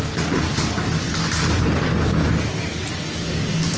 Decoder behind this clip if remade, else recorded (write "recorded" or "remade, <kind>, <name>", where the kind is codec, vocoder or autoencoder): recorded